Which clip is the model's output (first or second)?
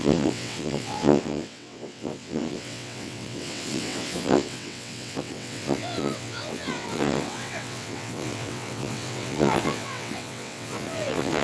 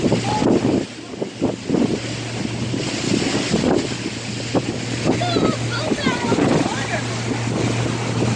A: first